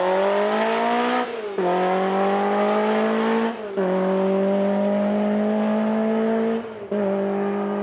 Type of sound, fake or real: real